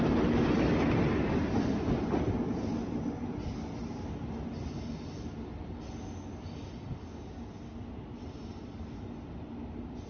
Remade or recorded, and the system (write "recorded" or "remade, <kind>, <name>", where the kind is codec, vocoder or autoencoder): recorded